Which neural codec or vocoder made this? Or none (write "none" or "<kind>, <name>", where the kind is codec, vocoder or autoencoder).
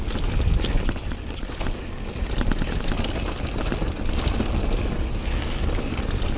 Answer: none